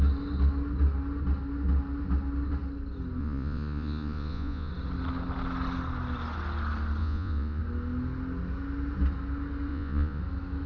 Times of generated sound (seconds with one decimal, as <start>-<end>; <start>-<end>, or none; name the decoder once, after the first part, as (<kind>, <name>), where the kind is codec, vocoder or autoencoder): 3.2-4.7 (vocoder, Vocos); 7.0-7.6; 9.7-10.2